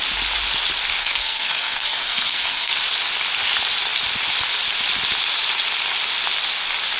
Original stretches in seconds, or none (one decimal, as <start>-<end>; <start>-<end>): 0.0-1.0; 2.7-7.0